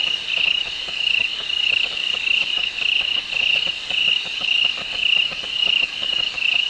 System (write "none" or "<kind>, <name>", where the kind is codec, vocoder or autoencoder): codec, DAC